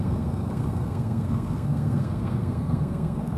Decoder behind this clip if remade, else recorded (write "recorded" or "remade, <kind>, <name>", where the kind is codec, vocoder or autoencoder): remade, codec, SNAC